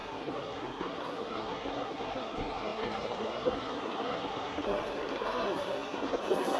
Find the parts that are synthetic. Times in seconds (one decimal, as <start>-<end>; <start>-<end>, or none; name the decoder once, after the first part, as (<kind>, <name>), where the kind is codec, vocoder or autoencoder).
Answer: 0.0-6.6 (codec, SNAC)